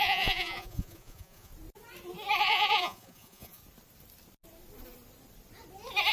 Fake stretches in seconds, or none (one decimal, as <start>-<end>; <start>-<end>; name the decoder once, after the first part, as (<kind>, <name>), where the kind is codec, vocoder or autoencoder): 0.0-1.5 (vocoder, Vocos); 2.4-3.6